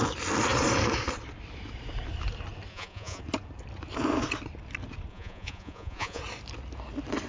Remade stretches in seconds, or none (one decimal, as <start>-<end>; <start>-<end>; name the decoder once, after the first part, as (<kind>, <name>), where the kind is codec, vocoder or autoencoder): 2.7-3.2 (vocoder, Vocos); 5.1-6.2